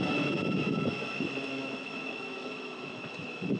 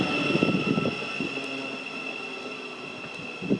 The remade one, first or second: first